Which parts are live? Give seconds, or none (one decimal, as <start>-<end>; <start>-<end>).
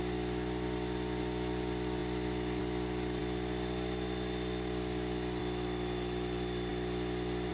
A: 3.2-5.4; 6.7-7.5